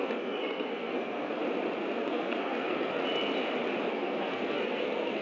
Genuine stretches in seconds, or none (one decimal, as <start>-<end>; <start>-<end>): 1.4-1.9; 3.0-3.9